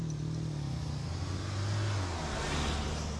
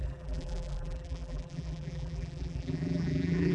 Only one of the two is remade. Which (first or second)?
second